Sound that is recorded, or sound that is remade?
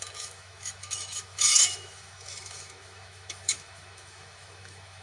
remade